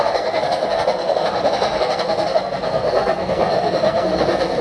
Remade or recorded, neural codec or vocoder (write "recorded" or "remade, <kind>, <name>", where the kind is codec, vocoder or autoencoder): remade, codec, SNAC